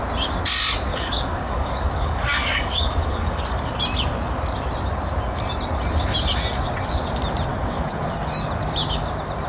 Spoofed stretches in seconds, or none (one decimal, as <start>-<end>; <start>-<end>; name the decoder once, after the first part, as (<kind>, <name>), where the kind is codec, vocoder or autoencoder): 0.9-3.7 (codec, DAC); 7.5-8.0